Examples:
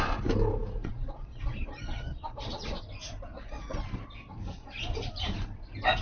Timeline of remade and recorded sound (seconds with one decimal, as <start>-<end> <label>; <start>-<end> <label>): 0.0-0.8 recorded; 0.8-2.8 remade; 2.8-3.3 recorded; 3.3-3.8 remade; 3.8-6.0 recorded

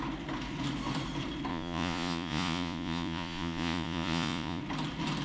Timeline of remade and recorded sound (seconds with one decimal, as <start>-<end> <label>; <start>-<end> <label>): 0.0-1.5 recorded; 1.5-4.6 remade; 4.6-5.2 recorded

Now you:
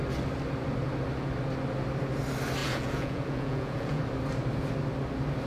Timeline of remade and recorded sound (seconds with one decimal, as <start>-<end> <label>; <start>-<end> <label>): 0.0-2.6 recorded; 2.6-4.0 remade; 4.0-5.5 recorded